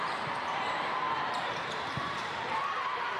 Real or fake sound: fake